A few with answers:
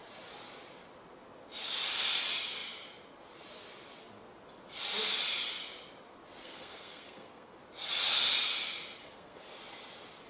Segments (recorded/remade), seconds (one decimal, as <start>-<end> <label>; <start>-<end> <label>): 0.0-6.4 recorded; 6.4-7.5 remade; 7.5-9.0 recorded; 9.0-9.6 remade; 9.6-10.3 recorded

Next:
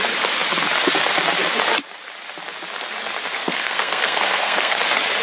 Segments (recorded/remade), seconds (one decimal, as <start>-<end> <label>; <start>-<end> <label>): 0.0-3.4 recorded; 3.4-4.8 remade; 4.8-5.2 recorded

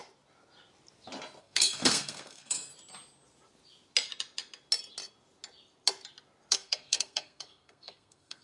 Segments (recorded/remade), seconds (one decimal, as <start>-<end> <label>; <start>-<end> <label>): 0.0-1.4 recorded; 1.4-2.7 remade; 2.7-6.5 recorded; 6.5-8.4 remade

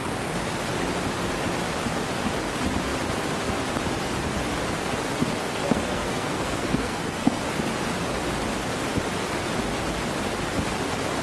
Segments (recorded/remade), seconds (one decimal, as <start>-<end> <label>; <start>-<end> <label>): 0.0-5.4 recorded; 5.4-7.4 remade; 7.4-11.2 recorded